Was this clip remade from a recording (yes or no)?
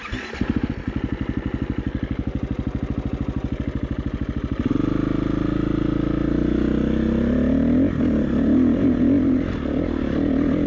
no